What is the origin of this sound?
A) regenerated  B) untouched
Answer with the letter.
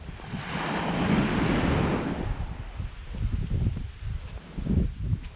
B